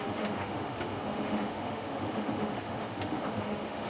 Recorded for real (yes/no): no